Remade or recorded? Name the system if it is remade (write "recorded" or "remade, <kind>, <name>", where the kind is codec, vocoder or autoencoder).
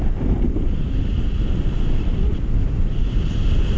recorded